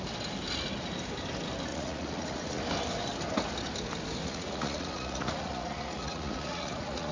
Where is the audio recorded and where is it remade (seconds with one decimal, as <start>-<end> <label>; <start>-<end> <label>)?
0.0-1.7 recorded; 1.7-2.6 remade; 2.6-4.2 recorded; 4.2-7.1 remade